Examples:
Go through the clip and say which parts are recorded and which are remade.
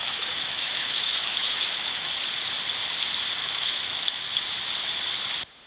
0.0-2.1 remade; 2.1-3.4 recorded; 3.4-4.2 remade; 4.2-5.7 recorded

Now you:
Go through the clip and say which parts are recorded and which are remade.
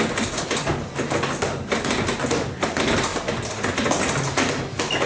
0.0-5.1 recorded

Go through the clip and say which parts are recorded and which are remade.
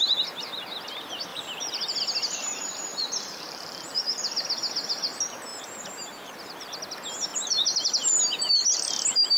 0.0-1.3 recorded; 1.3-2.0 remade; 2.0-2.9 recorded; 2.9-4.2 remade; 4.2-5.5 recorded; 5.5-6.7 remade; 6.7-7.3 recorded; 7.3-8.2 remade; 8.2-9.4 recorded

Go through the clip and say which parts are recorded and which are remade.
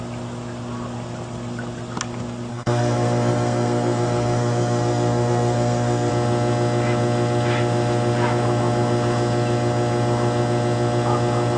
0.0-2.5 recorded; 2.5-6.1 remade; 6.1-11.6 recorded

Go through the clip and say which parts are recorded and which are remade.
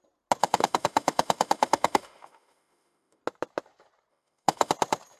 0.0-0.4 recorded; 0.4-3.2 remade; 3.2-4.1 recorded; 4.1-4.7 remade; 4.7-5.2 recorded